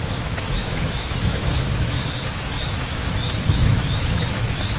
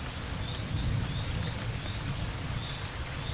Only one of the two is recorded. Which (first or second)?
second